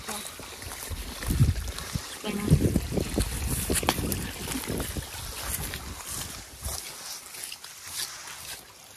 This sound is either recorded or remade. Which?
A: recorded